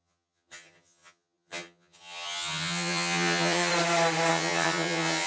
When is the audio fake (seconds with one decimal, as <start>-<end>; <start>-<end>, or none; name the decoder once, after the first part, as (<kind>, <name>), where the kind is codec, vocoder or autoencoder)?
0.0-3.7 (vocoder, HiFi-GAN); 4.3-5.3

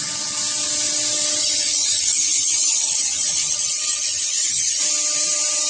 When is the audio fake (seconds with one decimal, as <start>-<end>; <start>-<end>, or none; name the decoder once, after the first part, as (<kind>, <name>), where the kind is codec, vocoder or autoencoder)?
1.4-4.8 (vocoder, HiFi-GAN)

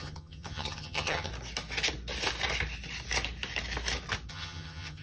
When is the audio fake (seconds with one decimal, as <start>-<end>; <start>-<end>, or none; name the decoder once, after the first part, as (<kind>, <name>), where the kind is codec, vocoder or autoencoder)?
0.0-1.3 (vocoder, HiFi-GAN); 4.3-5.0

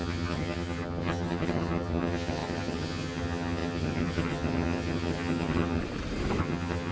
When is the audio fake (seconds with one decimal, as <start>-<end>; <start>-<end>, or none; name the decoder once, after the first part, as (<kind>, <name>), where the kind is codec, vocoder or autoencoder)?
0.0-5.8 (vocoder, HiFi-GAN); 6.4-6.9

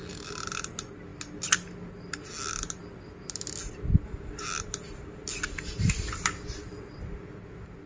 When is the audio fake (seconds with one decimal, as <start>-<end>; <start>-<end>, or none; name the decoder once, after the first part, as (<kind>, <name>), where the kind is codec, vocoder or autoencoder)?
none

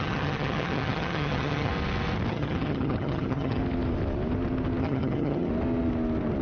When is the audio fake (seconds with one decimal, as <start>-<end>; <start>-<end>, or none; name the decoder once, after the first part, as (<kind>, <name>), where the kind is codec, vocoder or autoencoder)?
0.0-1.7 (vocoder, HiFi-GAN); 2.3-3.6; 4.8-5.5

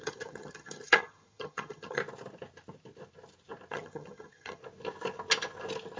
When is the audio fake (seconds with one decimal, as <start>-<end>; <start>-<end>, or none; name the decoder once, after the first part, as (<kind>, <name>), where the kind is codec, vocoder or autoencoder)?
0.0-2.0 (vocoder, HiFi-GAN); 3.7-4.6